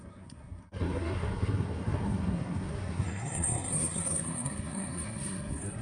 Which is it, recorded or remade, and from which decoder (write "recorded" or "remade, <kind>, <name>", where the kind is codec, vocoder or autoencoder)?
remade, codec, SNAC